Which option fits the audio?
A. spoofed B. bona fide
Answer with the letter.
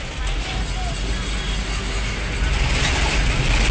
B